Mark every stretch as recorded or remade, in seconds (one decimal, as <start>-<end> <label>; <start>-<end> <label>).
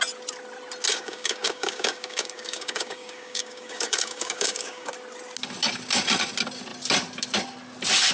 0.0-0.9 recorded; 0.9-4.9 remade; 4.9-8.1 recorded